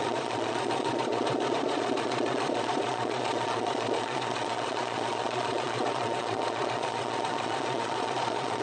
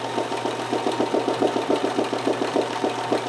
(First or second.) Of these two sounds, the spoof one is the first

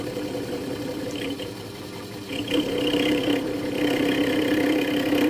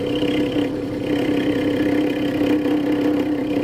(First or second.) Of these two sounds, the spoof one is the first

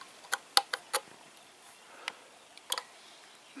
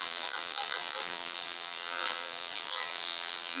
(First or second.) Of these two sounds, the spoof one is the second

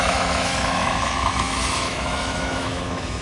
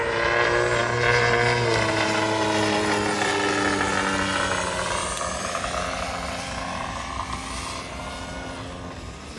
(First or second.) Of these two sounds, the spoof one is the first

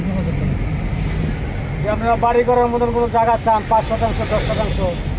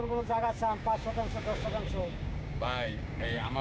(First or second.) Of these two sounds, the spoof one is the second